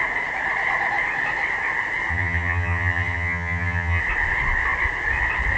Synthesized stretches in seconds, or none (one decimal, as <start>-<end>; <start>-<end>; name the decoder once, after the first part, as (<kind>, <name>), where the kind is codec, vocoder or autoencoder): 2.1-4.0 (vocoder, HiFi-GAN)